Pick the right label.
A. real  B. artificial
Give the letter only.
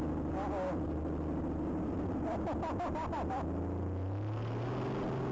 A